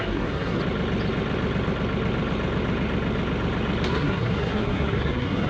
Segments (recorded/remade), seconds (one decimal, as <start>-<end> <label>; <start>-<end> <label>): 0.0-0.6 remade; 0.6-3.9 recorded; 3.9-5.5 remade